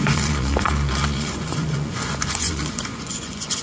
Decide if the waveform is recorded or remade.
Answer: remade